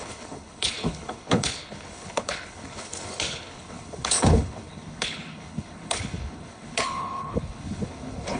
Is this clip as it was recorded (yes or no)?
no